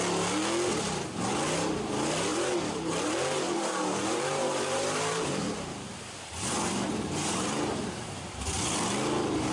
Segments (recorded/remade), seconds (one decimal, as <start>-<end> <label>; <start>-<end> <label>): 0.0-2.3 recorded; 2.3-6.0 remade; 6.0-6.7 recorded; 6.7-8.4 remade; 8.4-9.5 recorded